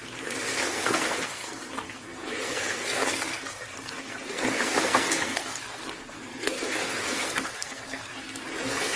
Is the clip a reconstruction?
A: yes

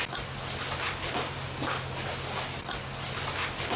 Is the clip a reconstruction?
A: no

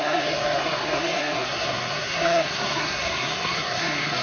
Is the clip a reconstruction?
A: yes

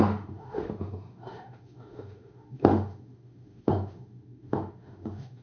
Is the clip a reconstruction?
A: yes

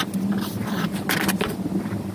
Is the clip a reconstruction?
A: no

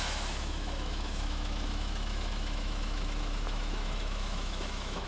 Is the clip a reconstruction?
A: yes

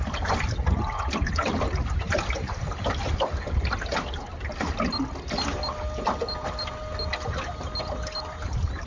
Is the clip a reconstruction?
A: no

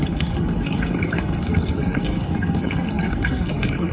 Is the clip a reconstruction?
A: yes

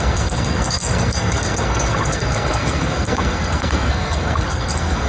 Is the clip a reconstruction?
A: yes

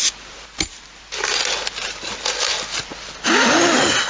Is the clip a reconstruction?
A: no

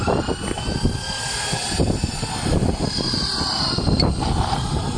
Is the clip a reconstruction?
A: no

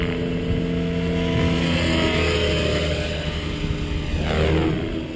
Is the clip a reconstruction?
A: no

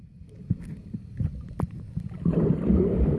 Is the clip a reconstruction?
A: no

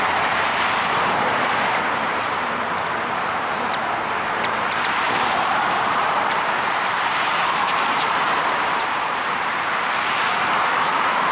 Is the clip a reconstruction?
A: yes